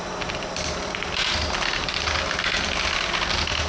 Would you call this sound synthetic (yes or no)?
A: no